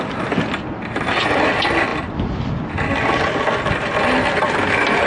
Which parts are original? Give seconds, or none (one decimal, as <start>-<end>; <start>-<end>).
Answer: 0.0-5.1